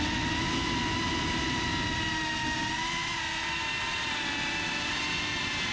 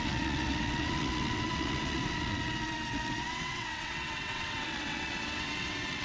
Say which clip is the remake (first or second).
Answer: second